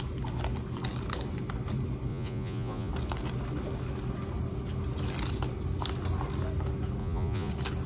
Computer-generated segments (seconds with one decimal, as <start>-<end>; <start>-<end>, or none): 2.1-2.9; 7.0-7.5